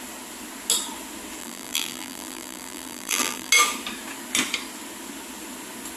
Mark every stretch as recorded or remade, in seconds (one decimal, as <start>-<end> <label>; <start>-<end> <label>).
0.0-1.4 recorded; 1.4-3.5 remade; 3.5-6.0 recorded